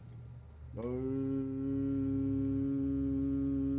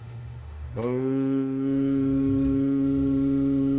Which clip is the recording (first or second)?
first